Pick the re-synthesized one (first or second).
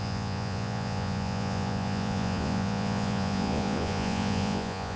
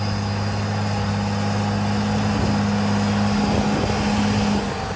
first